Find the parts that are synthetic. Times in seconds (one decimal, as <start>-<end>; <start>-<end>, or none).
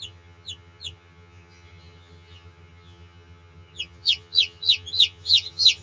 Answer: 0.0-5.8